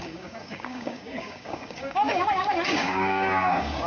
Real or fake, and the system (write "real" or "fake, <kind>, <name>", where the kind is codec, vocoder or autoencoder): fake, codec, DAC